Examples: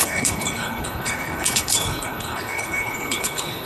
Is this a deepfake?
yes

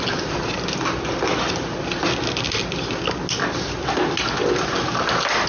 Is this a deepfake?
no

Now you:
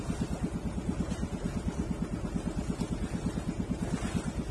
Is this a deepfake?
no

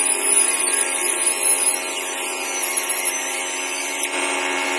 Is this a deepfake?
no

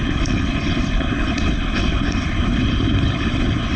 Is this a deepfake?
yes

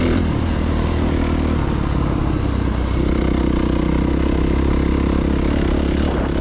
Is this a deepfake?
no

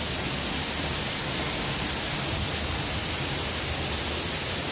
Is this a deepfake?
no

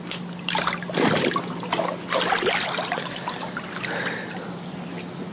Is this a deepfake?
no